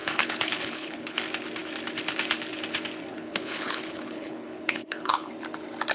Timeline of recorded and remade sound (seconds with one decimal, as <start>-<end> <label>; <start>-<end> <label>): 0.0-1.2 remade; 1.2-3.1 recorded; 3.1-5.3 remade; 5.3-5.9 recorded